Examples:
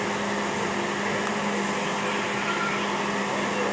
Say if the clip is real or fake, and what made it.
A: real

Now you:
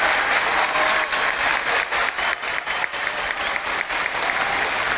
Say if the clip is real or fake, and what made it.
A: real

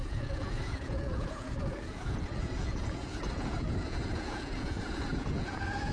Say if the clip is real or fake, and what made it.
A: fake, vocoder, Vocos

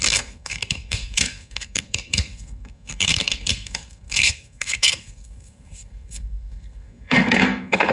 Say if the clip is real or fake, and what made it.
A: fake, codec, SNAC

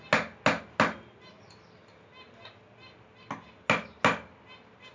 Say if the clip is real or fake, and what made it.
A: real